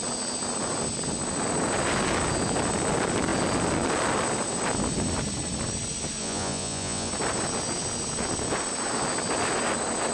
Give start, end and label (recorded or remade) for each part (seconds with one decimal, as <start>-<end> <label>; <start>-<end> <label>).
0.0-6.2 recorded; 6.2-7.1 remade; 7.1-10.1 recorded